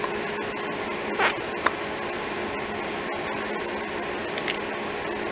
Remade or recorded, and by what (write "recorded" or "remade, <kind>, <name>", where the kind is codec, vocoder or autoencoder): recorded